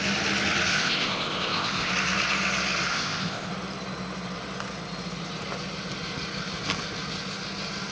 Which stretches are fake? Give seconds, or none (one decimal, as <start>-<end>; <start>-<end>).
0.7-1.9; 2.9-3.5